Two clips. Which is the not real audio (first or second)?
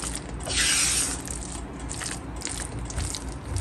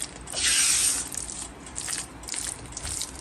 second